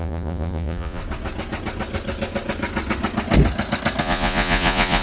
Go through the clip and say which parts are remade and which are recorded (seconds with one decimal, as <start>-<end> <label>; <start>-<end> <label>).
0.0-1.0 remade; 1.0-4.0 recorded; 4.0-5.0 remade